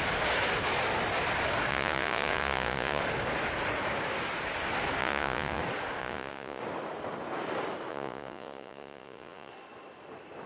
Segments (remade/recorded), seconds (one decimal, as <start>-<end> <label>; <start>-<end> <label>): 0.0-1.7 recorded; 1.7-3.0 remade; 3.0-5.0 recorded; 5.0-5.6 remade; 5.6-6.0 recorded; 6.0-6.6 remade; 6.6-7.9 recorded; 7.9-9.5 remade; 9.5-10.5 recorded